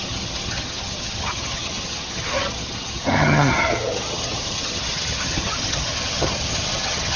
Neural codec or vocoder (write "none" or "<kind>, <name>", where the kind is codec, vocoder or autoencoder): vocoder, HiFi-GAN